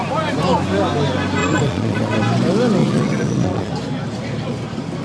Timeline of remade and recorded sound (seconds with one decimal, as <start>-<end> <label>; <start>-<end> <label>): 0.0-1.4 recorded; 1.4-2.2 remade; 2.2-2.8 recorded; 2.8-3.7 remade; 3.7-5.0 recorded